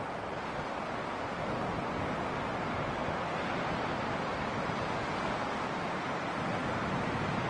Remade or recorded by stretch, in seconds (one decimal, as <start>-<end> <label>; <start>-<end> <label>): 0.0-7.5 recorded